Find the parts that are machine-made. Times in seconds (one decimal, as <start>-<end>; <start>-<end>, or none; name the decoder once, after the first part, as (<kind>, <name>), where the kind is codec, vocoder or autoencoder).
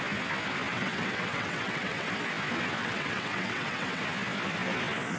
0.7-2.1 (vocoder, WaveNeXt); 2.8-4.0